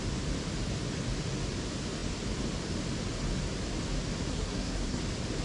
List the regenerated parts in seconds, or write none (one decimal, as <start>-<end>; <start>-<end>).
4.3-5.0